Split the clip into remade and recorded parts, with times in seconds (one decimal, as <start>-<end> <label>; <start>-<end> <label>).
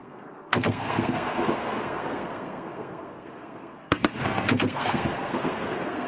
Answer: 0.0-6.1 remade